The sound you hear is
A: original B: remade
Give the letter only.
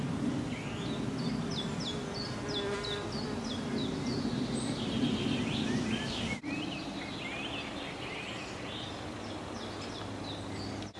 A